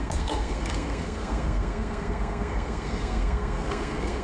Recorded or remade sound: remade